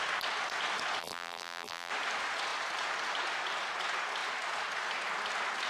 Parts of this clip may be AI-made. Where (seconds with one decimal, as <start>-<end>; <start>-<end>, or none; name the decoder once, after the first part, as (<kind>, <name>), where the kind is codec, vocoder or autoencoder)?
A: 1.0-1.9 (vocoder, BigVGAN v2)

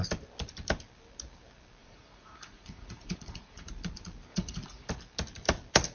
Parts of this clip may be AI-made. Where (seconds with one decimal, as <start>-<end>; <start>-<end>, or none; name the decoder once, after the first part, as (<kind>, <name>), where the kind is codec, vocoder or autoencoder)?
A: 1.8-3.7 (vocoder, Vocos); 4.3-4.9